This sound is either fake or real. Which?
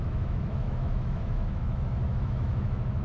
fake